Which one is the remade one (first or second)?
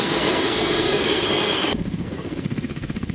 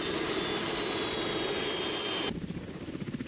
first